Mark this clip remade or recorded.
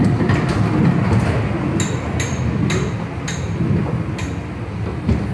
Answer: recorded